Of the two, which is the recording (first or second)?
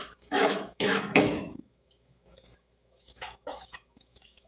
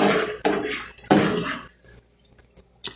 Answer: second